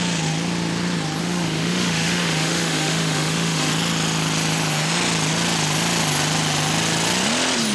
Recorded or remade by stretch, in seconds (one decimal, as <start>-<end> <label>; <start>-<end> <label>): 0.0-1.2 recorded; 1.2-3.7 remade; 3.7-7.7 recorded